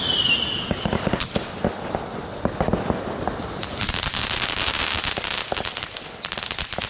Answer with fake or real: real